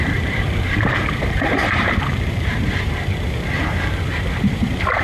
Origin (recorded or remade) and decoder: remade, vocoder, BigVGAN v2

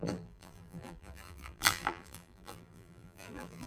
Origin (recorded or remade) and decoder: remade, vocoder, BigVGAN v2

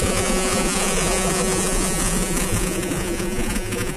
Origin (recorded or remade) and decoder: remade, vocoder, Vocos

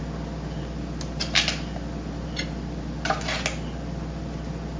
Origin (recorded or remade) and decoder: recorded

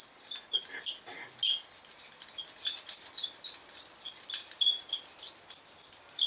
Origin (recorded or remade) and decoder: recorded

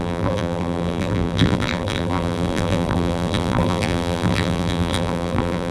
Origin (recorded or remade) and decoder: remade, vocoder, BigVGAN v2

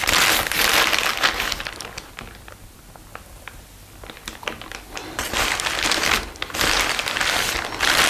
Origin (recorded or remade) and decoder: recorded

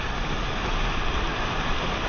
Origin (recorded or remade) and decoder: recorded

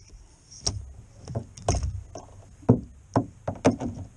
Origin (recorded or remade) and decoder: recorded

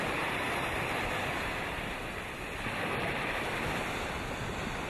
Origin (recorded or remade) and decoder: remade, vocoder, BigVGAN v2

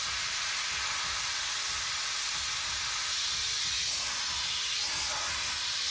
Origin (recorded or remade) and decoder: recorded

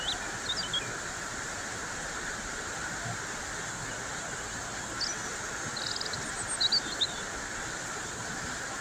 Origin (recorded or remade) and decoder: recorded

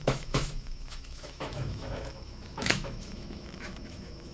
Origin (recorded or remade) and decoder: remade, autoencoder, DAC-VAE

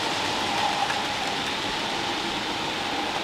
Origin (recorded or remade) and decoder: remade, vocoder, BigVGAN v2